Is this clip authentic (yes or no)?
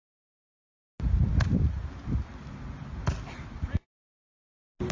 yes